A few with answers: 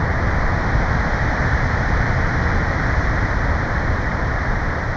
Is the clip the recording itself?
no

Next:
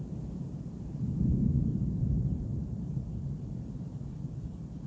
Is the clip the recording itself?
no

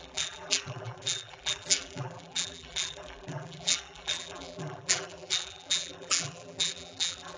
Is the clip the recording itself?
no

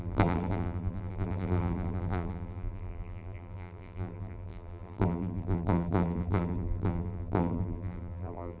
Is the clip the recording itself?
no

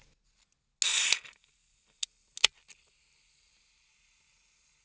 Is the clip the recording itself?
yes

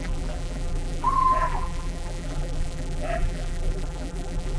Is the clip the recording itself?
no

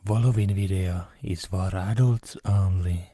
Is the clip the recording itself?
yes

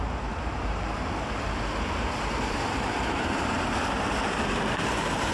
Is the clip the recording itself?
no